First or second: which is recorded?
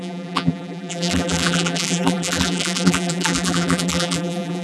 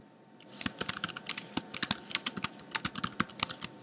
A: second